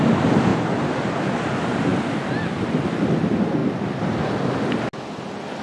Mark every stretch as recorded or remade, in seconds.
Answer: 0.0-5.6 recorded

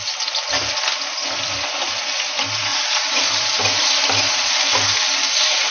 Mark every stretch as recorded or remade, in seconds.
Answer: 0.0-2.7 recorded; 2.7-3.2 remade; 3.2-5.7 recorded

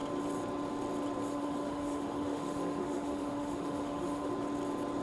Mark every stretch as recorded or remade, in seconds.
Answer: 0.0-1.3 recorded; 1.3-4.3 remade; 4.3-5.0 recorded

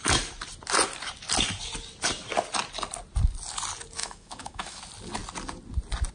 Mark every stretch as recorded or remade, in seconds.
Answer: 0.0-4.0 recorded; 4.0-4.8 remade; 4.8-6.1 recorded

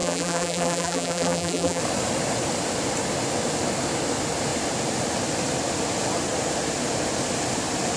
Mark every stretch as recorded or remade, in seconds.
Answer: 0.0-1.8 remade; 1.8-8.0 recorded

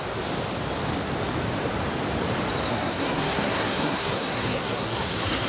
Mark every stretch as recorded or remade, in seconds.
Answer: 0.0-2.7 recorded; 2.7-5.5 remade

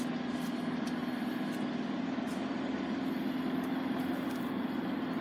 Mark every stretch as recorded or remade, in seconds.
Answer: 0.0-1.0 recorded; 1.0-4.1 remade; 4.1-5.2 recorded

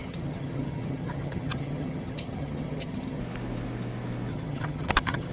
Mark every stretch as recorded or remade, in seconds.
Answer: 0.0-3.2 remade; 3.2-4.3 recorded; 4.3-5.3 remade